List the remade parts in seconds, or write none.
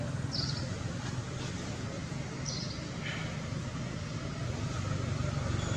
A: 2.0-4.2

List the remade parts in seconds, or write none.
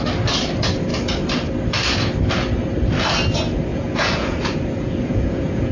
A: 3.7-5.7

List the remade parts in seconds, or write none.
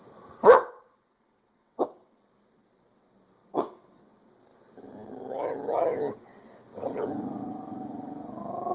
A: 0.4-2.2; 3.4-4.1